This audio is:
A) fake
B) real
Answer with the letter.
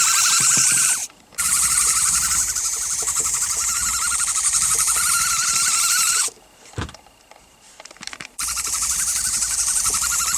A